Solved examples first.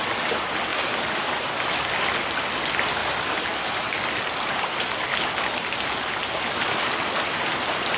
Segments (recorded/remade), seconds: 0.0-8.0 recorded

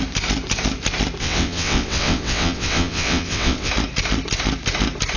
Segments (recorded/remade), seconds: 0.0-1.2 recorded; 1.2-3.7 remade; 3.7-5.2 recorded